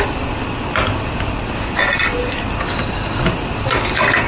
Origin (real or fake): real